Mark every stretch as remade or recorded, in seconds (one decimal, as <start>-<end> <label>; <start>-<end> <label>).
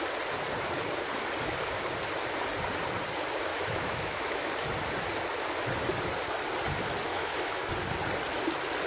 0.0-3.5 recorded; 3.5-4.5 remade; 4.5-7.1 recorded; 7.1-7.7 remade; 7.7-8.9 recorded